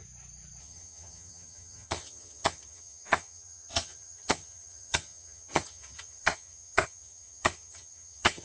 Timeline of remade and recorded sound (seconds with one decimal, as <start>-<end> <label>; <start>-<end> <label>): 0.0-0.6 recorded; 0.6-8.4 remade